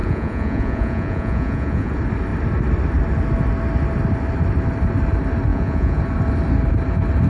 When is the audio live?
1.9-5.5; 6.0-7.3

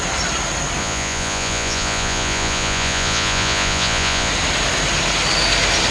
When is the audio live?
0.0-0.8; 4.3-5.9

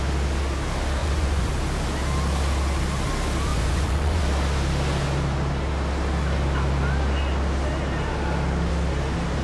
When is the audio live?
0.0-1.0; 1.5-3.5; 4.2-9.4